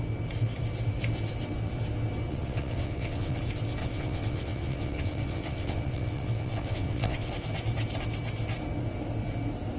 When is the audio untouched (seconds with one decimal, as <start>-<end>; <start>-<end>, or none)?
0.0-2.3; 3.4-3.8; 7.3-9.8